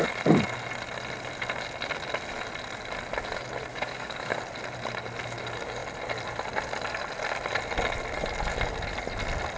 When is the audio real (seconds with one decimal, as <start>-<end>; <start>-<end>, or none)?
0.0-3.7; 4.4-9.6